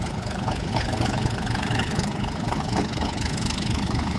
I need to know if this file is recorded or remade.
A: remade